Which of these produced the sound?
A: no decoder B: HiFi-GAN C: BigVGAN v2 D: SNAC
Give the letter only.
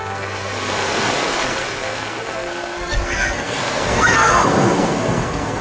D